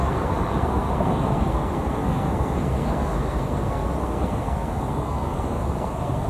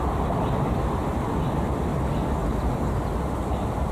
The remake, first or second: first